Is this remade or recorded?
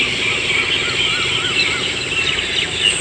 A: recorded